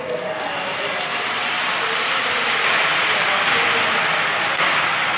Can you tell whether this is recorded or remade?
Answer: recorded